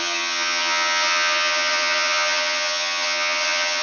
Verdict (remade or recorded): remade